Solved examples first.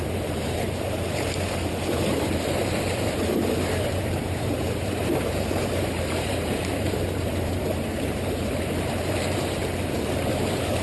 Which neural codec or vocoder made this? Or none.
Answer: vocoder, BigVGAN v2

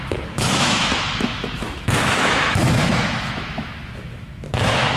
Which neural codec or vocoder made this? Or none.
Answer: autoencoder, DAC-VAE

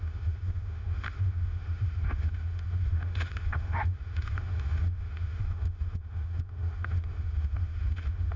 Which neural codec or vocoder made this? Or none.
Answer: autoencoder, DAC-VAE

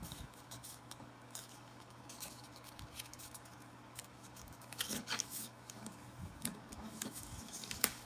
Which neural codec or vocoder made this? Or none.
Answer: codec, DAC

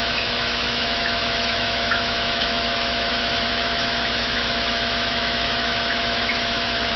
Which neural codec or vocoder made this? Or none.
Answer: autoencoder, DAC-VAE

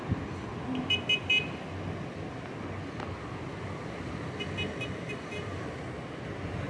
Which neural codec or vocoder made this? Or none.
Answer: none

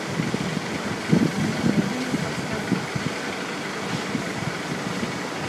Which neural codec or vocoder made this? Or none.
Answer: none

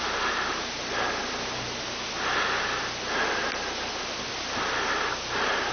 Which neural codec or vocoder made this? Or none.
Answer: none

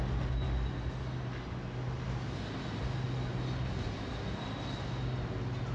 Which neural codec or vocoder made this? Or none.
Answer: none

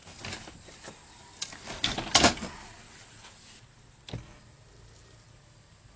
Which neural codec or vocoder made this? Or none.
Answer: none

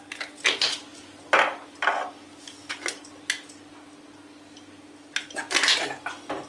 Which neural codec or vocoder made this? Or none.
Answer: none